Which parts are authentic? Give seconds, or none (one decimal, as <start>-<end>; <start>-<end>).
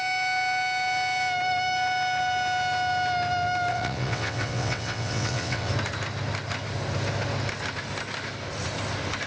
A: 0.0-3.7; 5.7-9.3